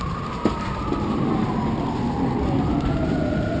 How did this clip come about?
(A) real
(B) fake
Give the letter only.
A